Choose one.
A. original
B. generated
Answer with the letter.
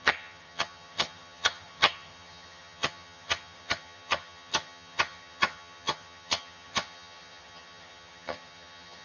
B